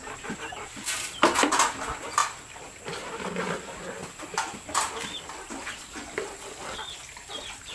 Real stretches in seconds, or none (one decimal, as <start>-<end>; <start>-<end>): none